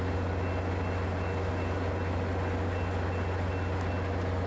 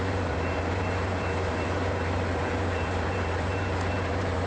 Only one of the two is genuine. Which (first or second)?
first